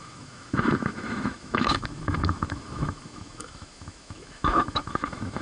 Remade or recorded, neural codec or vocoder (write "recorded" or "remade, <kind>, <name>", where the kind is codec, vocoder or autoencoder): remade, autoencoder, DAC-VAE